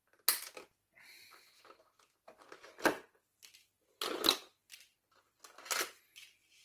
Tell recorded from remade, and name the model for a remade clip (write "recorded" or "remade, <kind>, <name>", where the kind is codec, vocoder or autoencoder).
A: recorded